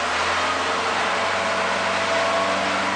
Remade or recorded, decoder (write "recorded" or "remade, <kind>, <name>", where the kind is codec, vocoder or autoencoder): recorded